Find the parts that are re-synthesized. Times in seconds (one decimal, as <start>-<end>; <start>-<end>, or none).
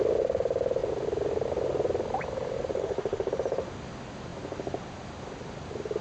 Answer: 2.7-3.3